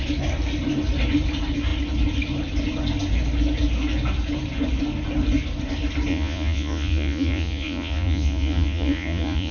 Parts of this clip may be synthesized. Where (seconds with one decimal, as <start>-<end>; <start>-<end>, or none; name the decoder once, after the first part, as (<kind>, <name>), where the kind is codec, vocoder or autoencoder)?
6.1-9.5 (vocoder, Vocos)